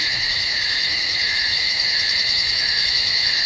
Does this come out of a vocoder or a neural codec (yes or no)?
yes